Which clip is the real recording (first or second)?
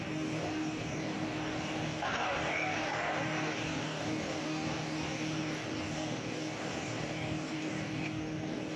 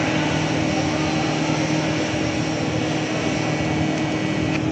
second